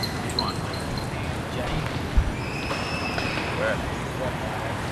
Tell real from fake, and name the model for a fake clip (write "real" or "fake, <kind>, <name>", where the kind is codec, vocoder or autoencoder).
real